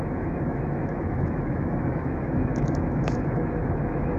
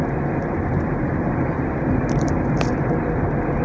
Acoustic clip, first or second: second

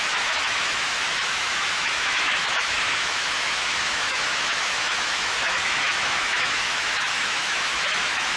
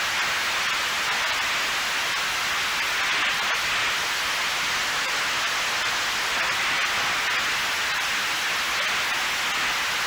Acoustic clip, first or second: second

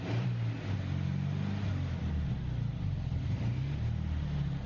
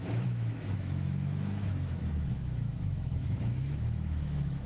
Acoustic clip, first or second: first